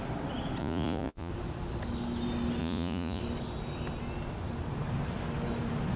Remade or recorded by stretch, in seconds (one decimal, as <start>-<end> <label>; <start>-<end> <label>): 0.0-0.6 recorded; 0.6-1.3 remade; 1.3-2.6 recorded; 2.6-3.2 remade; 3.2-6.0 recorded